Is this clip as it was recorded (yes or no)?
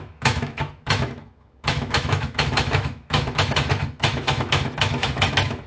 no